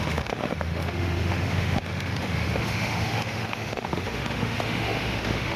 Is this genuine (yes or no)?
no